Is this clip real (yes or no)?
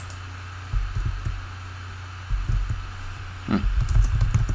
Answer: yes